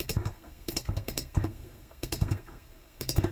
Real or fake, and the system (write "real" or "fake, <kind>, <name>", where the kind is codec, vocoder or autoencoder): fake, codec, SNAC